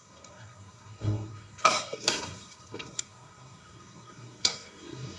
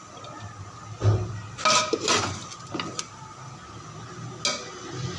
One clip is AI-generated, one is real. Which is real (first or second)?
second